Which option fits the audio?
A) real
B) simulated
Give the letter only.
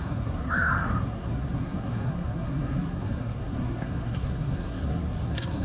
B